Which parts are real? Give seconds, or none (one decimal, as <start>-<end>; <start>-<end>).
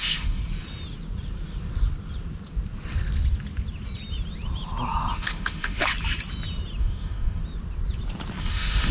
0.4-5.1; 5.8-6.8; 7.4-8.4